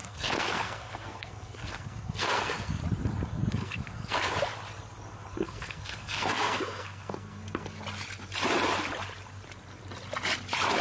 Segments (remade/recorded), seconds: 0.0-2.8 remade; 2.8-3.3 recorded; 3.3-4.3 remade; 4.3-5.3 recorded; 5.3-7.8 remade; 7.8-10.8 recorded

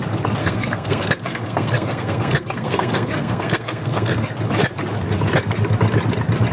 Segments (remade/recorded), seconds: 0.0-0.4 recorded; 0.4-4.3 remade; 4.3-6.5 recorded